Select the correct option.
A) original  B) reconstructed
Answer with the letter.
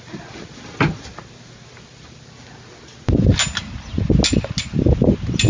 A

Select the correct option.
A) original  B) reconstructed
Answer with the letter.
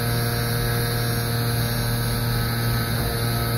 A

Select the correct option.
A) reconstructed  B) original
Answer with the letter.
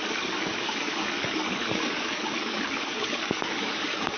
A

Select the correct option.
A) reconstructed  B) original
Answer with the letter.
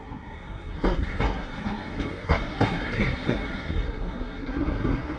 A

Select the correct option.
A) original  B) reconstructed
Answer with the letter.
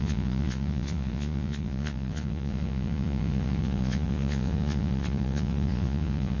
B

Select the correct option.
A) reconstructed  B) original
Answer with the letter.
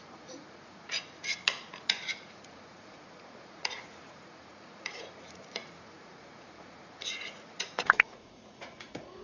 A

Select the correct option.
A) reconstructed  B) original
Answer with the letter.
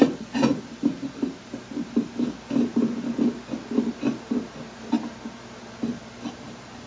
B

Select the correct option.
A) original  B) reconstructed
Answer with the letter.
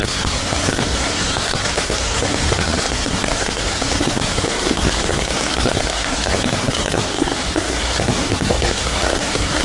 B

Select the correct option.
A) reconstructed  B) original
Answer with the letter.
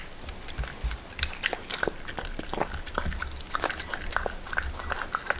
B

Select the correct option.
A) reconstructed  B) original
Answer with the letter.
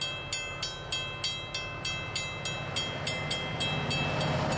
B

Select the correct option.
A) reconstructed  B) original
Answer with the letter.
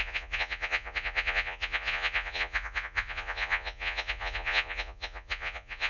A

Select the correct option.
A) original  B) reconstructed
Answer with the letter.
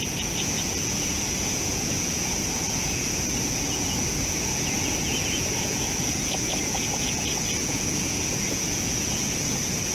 B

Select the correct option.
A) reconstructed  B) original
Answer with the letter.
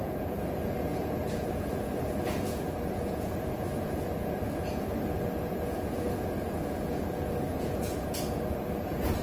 A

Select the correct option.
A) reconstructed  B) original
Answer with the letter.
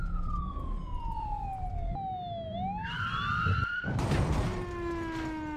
B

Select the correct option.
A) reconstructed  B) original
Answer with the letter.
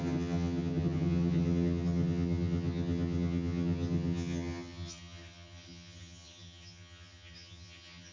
A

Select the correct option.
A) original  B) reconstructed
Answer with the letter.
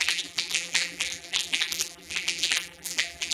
B